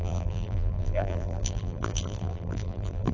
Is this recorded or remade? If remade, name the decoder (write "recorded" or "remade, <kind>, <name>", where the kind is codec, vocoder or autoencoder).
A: remade, vocoder, BigVGAN v2